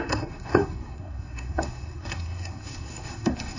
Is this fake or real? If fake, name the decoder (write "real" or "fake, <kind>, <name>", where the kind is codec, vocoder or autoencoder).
fake, codec, SNAC